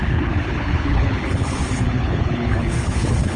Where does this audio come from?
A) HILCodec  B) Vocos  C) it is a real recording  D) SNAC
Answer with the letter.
A